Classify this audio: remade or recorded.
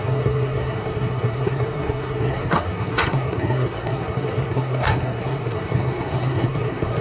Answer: remade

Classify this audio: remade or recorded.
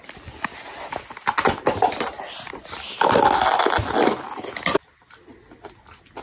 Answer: recorded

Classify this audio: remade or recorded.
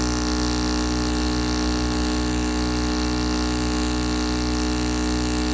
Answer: recorded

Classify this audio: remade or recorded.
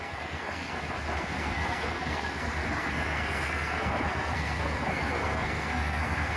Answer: remade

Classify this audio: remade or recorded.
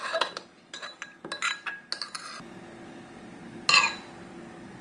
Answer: recorded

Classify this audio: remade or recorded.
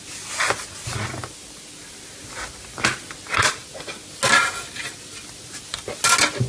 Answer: recorded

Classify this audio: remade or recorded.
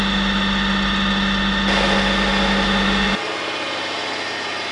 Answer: recorded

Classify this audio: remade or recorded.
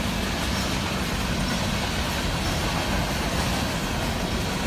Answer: recorded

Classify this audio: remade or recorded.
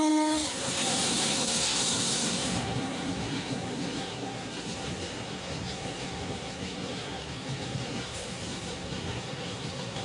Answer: remade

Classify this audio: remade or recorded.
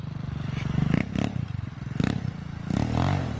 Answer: recorded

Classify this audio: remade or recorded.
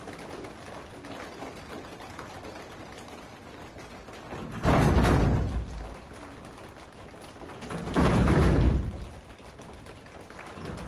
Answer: recorded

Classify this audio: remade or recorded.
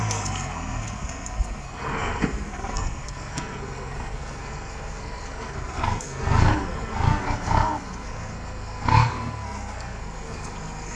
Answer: remade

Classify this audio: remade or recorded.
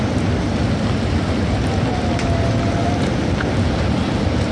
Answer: recorded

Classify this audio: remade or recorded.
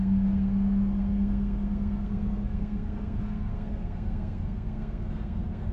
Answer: remade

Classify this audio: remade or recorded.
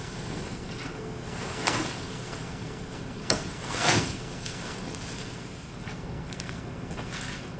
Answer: remade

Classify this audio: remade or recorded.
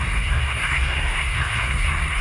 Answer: remade